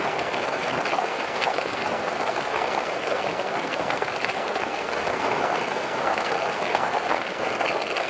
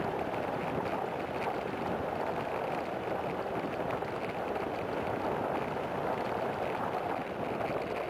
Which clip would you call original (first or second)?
second